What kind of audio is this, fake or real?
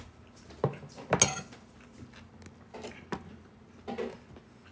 real